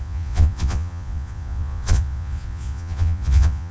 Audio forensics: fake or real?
fake